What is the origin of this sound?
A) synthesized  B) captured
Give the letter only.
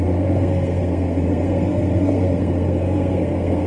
A